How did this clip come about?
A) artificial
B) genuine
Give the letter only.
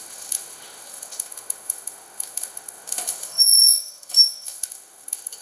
A